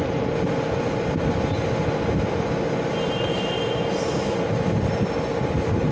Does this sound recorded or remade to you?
recorded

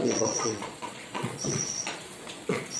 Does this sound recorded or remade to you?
remade